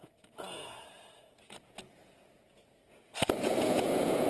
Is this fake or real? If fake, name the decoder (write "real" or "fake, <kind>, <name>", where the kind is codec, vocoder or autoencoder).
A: fake, vocoder, Vocos